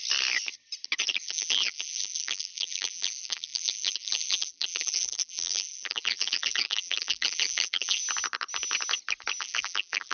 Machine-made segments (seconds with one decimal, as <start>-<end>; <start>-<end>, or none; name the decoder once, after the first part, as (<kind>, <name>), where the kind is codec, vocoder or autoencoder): 1.2-8.0 (vocoder, BigVGAN v2); 9.4-10.1